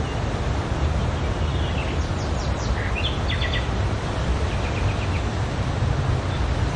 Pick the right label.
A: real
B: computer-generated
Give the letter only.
A